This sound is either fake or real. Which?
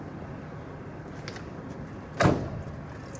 real